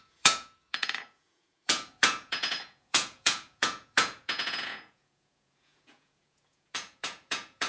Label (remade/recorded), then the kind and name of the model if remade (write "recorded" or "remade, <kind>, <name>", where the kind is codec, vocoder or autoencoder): remade, vocoder, Vocos